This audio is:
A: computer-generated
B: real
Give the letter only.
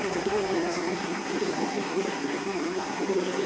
A